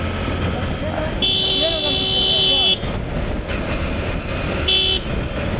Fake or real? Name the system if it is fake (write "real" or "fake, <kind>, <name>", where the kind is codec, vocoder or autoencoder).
real